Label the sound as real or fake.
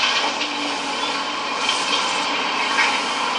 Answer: real